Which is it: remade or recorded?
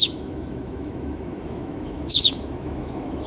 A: remade